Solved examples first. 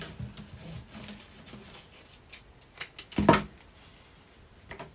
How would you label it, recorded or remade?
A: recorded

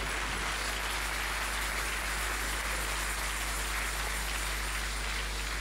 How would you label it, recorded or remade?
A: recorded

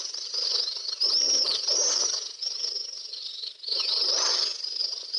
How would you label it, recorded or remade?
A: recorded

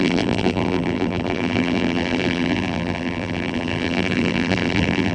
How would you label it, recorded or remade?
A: remade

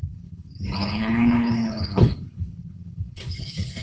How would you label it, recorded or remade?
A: remade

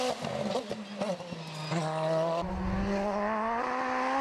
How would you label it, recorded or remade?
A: recorded